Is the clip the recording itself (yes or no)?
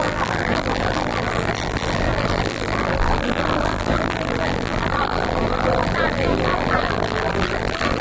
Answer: no